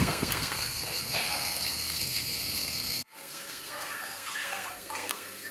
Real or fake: fake